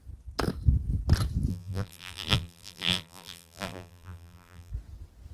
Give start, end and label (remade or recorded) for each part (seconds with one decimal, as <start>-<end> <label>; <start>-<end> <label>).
0.0-1.5 recorded; 1.5-4.7 remade; 4.7-5.3 recorded